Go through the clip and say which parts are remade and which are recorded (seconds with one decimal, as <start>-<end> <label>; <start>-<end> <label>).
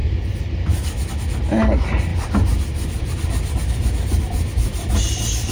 0.0-5.5 recorded